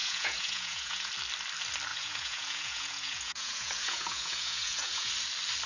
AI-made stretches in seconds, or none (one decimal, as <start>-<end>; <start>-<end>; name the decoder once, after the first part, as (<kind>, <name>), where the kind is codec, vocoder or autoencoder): 0.0-1.1 (vocoder, Vocos); 1.9-5.1